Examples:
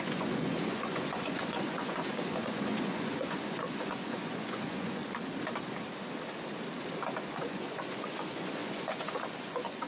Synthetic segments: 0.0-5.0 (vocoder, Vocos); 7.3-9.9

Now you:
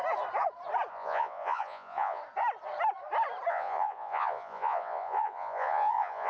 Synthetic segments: 0.9-2.2 (vocoder, Vocos); 3.5-6.3

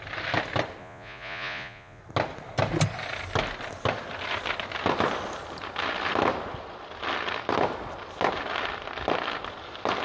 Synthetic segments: 0.8-2.0 (vocoder, Vocos)

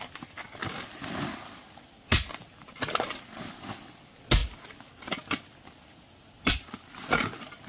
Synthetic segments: none